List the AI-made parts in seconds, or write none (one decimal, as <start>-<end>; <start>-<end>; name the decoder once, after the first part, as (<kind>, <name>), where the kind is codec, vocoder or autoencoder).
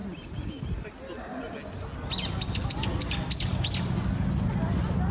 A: none